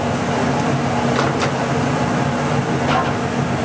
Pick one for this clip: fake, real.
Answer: real